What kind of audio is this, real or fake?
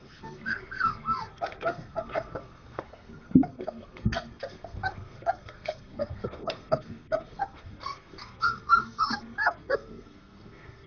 fake